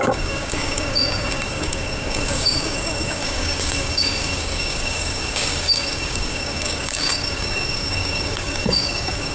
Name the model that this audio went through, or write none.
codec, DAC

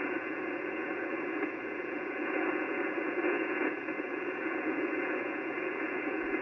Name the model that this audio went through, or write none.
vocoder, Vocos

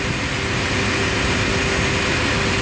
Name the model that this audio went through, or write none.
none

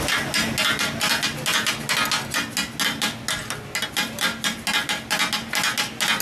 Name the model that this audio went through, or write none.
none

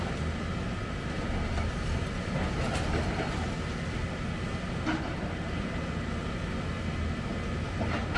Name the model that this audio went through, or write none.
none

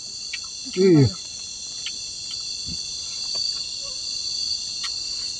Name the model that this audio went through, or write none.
none